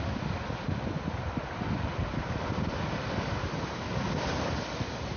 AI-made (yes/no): no